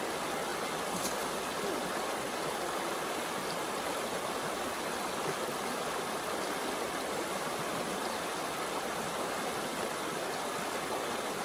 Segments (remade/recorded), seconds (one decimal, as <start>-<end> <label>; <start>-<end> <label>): 0.0-11.4 recorded